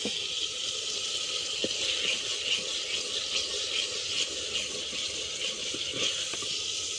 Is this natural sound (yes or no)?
yes